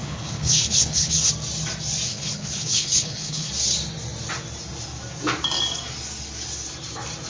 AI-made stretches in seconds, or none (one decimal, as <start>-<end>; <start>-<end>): 0.0-1.3; 2.1-3.5